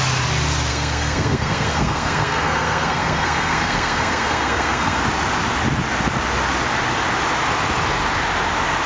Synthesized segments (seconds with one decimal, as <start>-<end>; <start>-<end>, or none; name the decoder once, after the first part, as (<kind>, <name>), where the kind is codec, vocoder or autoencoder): 0.7-5.0 (codec, SNAC)